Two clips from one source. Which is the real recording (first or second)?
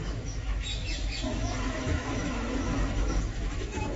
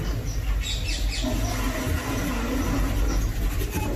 second